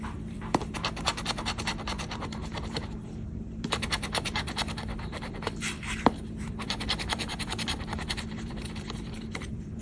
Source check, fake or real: fake